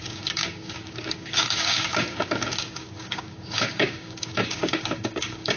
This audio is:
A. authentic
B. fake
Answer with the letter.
B